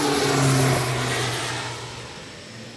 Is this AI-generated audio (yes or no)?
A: no